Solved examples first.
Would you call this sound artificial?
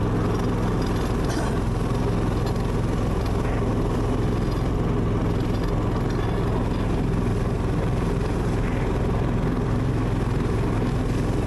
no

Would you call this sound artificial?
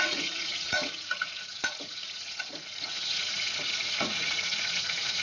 yes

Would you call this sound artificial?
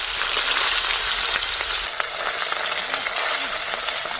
no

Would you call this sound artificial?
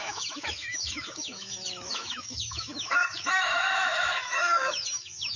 yes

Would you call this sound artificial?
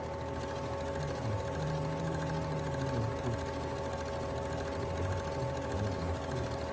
no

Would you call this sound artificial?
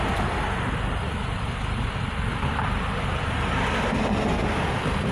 no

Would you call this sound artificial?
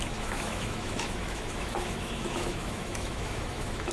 yes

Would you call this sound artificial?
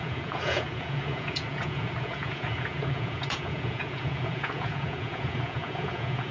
yes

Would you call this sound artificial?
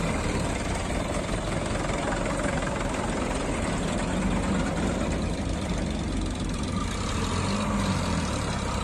no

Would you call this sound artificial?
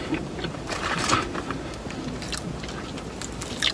no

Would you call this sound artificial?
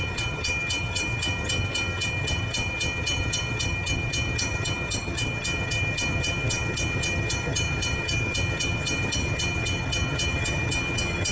yes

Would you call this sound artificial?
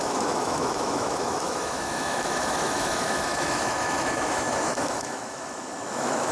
yes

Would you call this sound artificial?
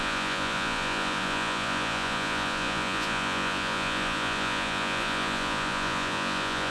yes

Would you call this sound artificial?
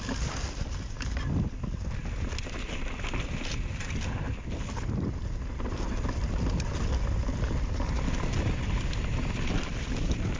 no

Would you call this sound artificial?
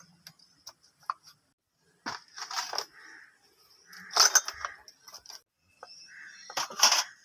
no